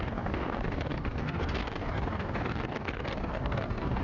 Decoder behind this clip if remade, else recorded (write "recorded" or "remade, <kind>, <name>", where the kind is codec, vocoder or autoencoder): remade, codec, DAC